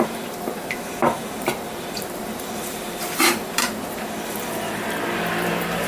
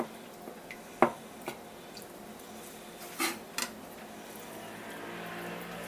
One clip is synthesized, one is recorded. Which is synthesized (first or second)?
first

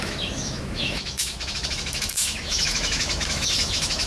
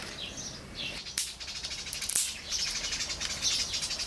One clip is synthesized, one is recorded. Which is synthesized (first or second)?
first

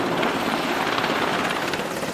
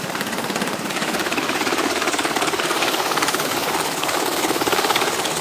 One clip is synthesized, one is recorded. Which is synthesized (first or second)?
second